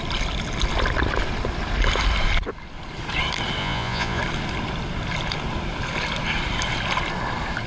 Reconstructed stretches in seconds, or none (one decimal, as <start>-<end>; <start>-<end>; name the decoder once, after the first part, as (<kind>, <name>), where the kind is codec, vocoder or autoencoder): 3.6-4.2 (vocoder, Vocos)